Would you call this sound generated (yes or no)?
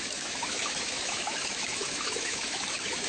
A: yes